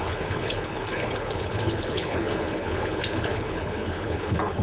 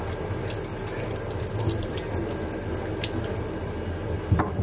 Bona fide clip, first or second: second